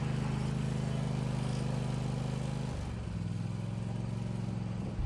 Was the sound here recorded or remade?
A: recorded